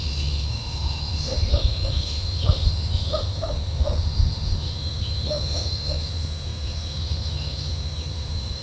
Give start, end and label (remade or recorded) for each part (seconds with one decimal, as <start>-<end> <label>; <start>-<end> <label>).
0.0-8.6 remade